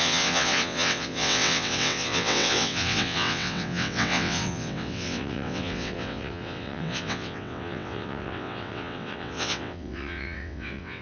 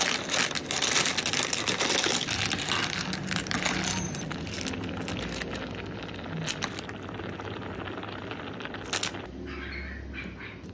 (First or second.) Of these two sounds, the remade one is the first